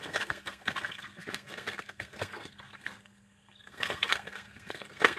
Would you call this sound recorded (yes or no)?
no